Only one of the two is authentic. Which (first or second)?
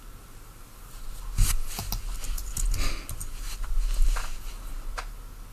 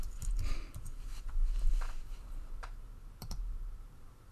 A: first